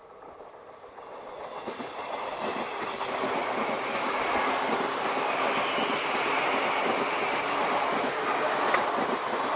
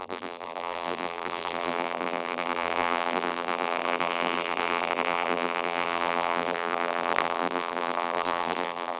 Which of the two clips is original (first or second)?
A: first